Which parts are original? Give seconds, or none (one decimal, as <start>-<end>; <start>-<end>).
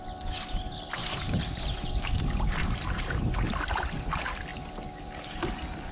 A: 0.0-1.0; 1.9-2.6; 3.2-5.9